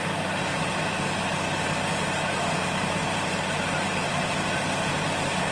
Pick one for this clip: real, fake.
fake